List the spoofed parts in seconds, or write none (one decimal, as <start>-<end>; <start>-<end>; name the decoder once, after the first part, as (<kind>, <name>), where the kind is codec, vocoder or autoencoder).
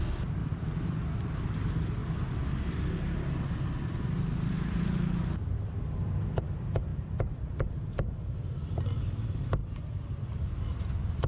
none